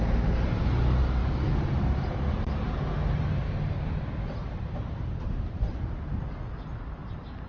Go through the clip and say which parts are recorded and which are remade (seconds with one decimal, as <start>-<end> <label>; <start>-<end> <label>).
0.0-1.2 recorded; 1.2-2.8 remade; 2.8-4.4 recorded; 4.4-5.9 remade; 5.9-7.5 recorded